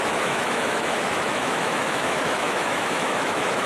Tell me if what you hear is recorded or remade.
remade